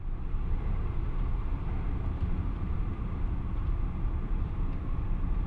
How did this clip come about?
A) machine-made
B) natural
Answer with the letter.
A